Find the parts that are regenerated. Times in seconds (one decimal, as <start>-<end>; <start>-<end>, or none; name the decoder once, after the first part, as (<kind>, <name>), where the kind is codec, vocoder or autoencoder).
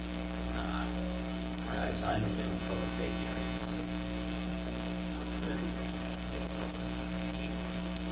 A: 0.0-2.6 (codec, SNAC); 3.6-8.1